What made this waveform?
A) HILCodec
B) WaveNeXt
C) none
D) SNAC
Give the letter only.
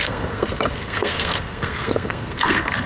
D